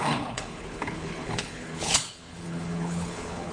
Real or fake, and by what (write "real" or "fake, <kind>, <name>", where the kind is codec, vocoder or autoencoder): fake, codec, HILCodec